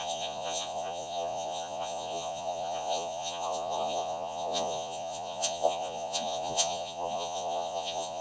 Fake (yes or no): yes